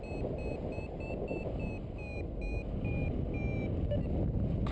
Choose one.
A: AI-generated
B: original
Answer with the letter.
B